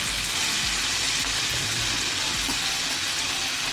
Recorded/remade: recorded